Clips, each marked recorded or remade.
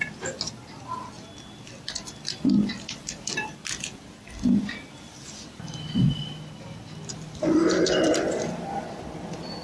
remade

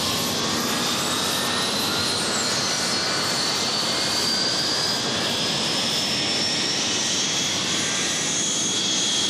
recorded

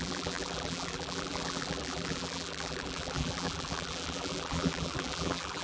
remade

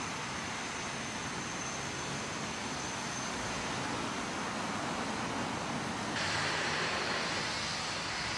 recorded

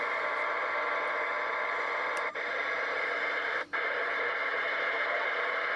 remade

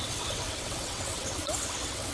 remade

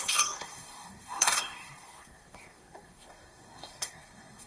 remade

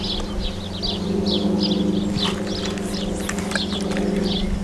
recorded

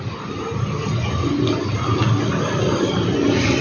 recorded